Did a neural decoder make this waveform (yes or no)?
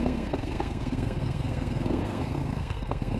yes